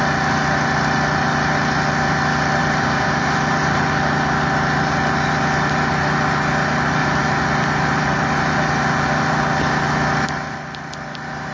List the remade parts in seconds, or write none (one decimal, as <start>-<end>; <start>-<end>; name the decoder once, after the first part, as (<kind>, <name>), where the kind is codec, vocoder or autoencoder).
2.6-3.8 (vocoder, BigVGAN v2); 7.0-9.4